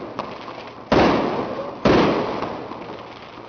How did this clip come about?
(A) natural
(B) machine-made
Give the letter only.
A